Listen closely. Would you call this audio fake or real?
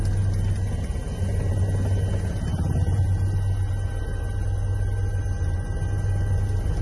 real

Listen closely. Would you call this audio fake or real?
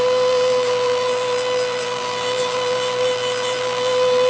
fake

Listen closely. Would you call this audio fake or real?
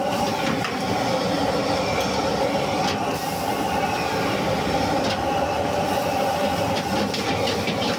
real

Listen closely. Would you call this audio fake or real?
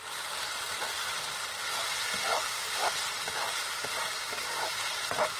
real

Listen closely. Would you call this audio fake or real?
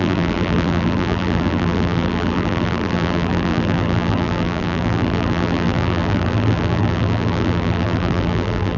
fake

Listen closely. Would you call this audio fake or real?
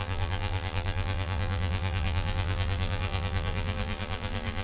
fake